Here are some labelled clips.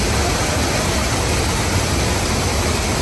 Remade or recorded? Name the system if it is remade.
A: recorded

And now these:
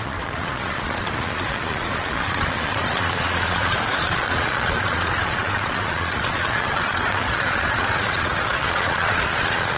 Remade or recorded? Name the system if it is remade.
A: remade, vocoder, Vocos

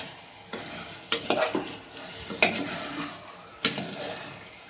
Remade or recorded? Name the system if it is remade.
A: recorded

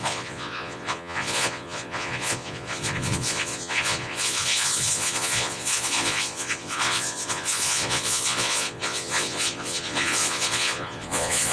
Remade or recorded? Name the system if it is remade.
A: remade, vocoder, Vocos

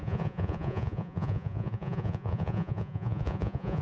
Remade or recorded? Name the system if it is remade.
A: remade, vocoder, Vocos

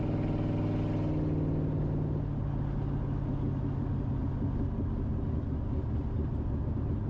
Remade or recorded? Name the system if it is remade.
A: recorded